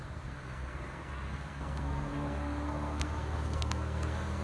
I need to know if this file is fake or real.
fake